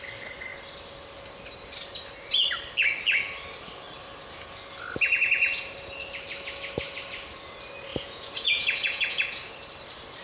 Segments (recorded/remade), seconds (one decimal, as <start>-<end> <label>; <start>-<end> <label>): 0.0-7.9 recorded; 7.9-9.5 remade; 9.5-10.2 recorded